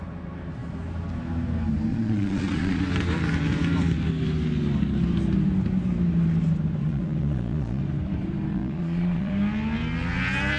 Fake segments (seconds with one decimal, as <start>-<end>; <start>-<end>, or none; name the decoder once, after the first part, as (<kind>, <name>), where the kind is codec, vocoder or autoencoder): 1.9-2.8 (vocoder, Vocos); 6.8-7.8; 8.5-9.3